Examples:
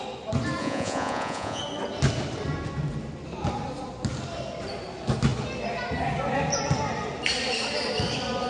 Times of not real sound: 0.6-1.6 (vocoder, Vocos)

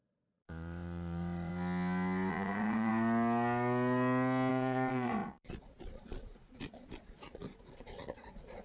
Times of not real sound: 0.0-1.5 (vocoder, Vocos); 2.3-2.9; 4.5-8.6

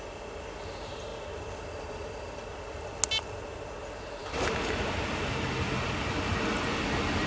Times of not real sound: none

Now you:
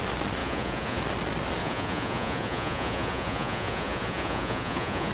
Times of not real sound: 0.4-1.0 (vocoder, Vocos); 1.6-5.1

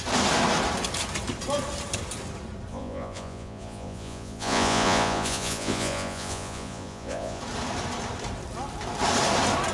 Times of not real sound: 2.7-7.4 (vocoder, Vocos)